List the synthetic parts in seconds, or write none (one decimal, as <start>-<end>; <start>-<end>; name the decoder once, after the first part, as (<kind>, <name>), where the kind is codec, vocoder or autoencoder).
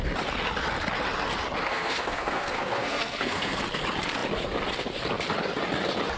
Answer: 1.7-3.6 (codec, SNAC)